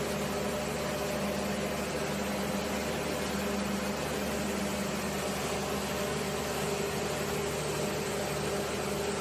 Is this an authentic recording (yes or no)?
yes